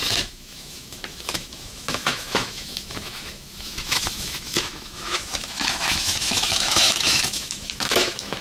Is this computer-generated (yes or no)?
yes